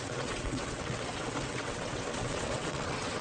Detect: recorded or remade remade